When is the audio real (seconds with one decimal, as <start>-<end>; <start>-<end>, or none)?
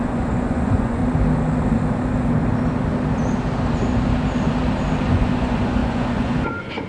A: 1.0-5.1